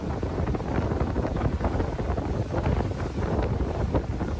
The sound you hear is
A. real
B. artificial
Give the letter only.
A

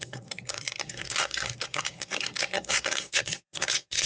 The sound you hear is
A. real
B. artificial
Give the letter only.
B